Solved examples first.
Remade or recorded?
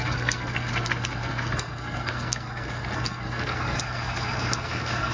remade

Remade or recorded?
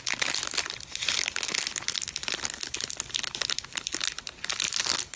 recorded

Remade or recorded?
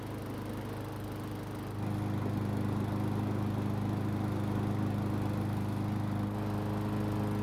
recorded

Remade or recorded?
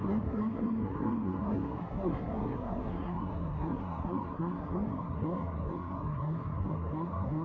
remade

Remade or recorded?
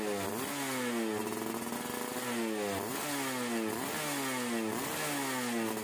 recorded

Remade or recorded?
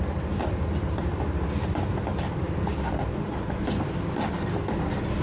recorded